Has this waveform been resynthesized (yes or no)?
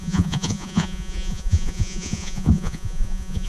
yes